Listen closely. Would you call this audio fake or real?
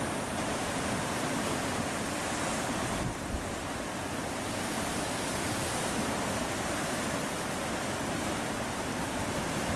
real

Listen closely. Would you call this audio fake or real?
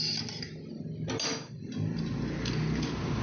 real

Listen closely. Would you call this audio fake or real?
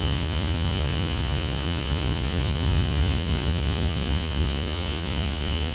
fake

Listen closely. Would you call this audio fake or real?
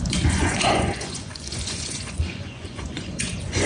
fake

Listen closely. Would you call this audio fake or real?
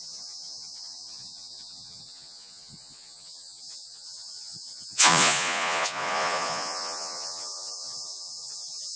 fake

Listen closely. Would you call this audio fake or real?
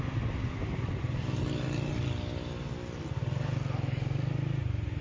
real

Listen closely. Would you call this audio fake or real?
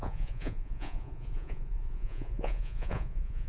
fake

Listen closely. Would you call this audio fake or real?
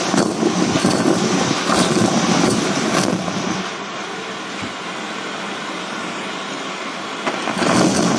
real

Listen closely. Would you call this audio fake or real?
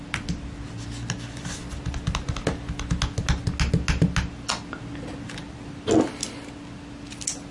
real